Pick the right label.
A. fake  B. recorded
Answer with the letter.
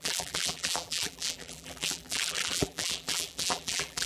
A